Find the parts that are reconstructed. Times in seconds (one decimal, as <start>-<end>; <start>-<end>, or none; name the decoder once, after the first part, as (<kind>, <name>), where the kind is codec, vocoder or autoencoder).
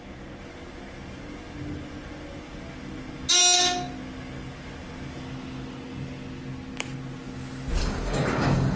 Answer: 7.8-8.8 (codec, DAC)